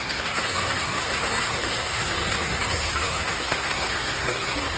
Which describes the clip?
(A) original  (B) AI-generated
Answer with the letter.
B